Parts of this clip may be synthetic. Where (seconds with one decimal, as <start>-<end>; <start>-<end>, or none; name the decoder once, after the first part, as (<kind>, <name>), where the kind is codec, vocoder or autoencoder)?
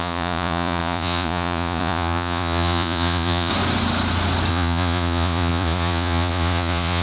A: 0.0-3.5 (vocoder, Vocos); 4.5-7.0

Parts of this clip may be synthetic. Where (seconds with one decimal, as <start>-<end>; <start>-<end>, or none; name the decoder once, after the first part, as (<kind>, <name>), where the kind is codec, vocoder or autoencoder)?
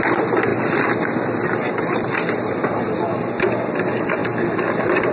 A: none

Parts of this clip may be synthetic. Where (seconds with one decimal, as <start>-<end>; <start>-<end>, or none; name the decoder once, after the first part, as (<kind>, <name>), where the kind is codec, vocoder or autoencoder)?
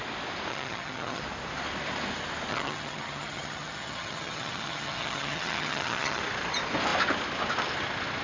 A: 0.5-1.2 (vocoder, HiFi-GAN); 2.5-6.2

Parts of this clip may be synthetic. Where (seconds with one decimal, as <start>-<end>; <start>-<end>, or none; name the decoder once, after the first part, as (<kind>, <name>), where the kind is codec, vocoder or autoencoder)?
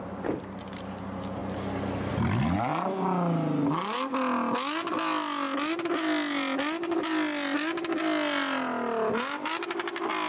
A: none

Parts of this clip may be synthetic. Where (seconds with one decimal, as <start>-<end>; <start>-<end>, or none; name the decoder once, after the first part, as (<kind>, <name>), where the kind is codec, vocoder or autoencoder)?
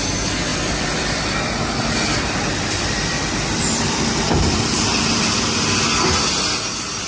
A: 0.5-4.8 (vocoder, BigVGAN v2)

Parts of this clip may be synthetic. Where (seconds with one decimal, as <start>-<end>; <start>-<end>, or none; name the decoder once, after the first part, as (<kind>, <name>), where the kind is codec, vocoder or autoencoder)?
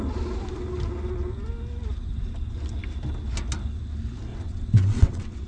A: 4.3-5.5 (vocoder, WaveNeXt)